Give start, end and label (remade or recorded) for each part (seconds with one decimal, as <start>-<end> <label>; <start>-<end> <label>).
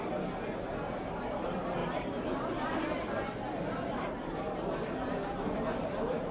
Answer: 0.0-1.8 recorded; 1.8-4.4 remade; 4.4-6.3 recorded